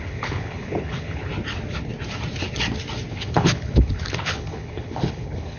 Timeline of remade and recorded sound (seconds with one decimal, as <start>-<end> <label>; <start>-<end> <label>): 0.0-1.3 remade; 1.3-3.1 recorded; 3.1-5.6 remade